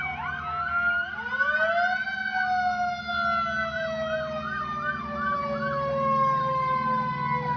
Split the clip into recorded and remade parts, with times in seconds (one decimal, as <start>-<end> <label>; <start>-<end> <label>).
0.0-7.6 recorded